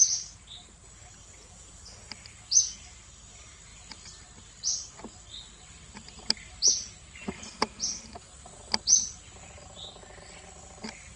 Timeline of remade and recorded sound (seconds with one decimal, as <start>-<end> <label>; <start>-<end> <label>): 0.0-0.6 recorded; 0.6-3.2 remade; 3.2-3.7 recorded; 3.7-8.8 remade; 8.8-11.2 recorded